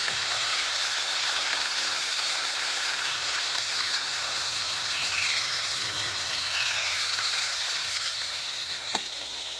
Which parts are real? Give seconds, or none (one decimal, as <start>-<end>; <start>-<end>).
none